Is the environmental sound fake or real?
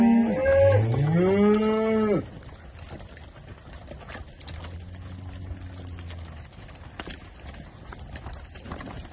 real